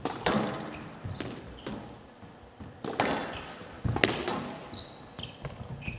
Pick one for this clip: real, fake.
real